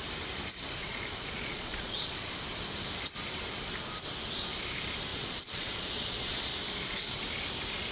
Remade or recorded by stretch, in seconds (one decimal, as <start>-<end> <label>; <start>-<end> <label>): 0.0-0.8 recorded; 0.8-2.3 remade; 2.3-5.1 recorded; 5.1-6.4 remade; 6.4-7.9 recorded